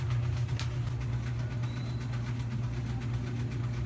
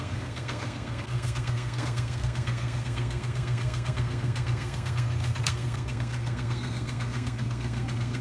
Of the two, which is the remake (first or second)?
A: second